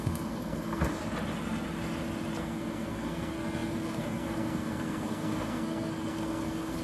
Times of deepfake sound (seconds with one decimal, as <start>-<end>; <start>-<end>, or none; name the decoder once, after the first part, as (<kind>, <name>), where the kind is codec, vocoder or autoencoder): 0.0-1.0 (codec, SNAC); 2.4-6.8